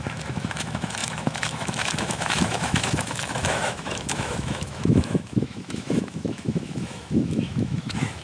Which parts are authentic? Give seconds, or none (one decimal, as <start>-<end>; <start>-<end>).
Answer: none